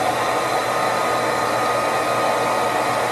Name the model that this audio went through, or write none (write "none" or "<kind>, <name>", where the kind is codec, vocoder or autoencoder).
none